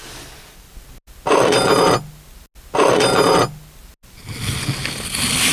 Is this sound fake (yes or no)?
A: no